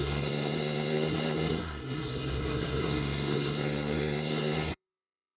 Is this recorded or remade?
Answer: remade